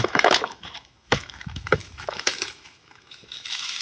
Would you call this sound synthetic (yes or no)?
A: yes